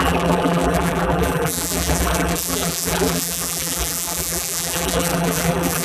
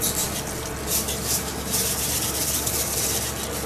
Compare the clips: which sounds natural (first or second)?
second